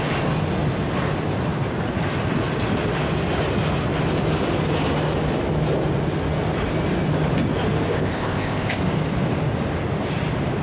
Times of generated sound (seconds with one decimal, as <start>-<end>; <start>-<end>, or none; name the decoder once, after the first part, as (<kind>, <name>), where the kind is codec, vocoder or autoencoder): 7.9-8.8 (codec, ZipCodec)